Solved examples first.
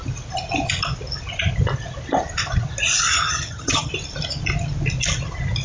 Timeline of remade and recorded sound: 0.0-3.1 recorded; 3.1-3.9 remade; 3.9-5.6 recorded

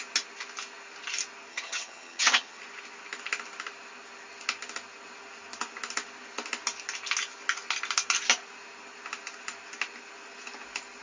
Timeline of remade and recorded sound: 0.0-1.5 recorded; 1.5-2.6 remade; 2.6-11.0 recorded

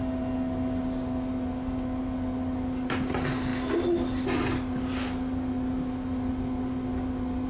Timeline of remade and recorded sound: 0.0-7.5 recorded

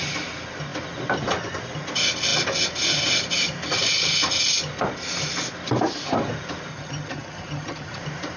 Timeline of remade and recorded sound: 0.0-6.7 recorded; 6.7-8.0 remade; 8.0-8.4 recorded

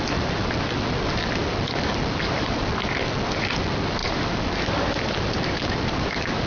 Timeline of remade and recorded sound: 0.0-6.5 recorded